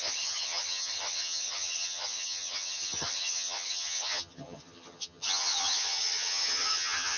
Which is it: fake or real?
fake